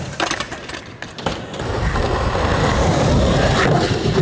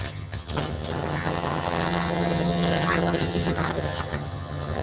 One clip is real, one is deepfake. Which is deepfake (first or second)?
second